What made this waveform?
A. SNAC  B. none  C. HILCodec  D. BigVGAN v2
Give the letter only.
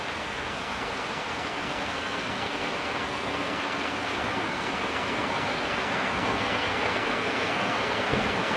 A